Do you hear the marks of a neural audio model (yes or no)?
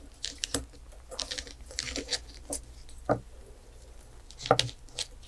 no